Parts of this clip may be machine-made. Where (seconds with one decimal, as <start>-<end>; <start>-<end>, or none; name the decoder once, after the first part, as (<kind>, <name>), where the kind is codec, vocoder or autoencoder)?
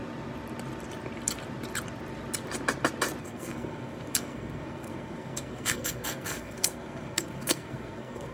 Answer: 3.2-8.3 (codec, SNAC)